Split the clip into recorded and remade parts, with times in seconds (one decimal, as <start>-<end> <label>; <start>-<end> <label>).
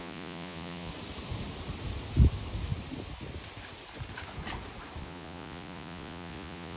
0.0-0.9 remade; 0.9-5.0 recorded; 5.0-6.8 remade